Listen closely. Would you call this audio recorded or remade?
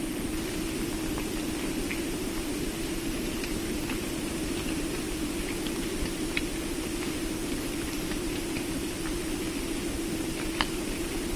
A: remade